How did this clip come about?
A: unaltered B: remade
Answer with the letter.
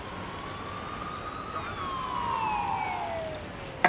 A